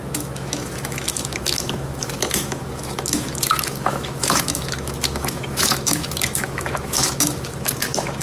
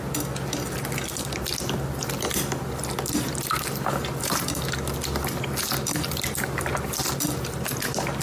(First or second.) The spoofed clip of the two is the first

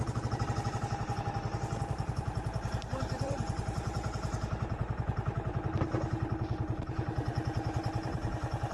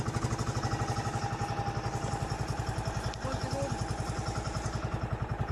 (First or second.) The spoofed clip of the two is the first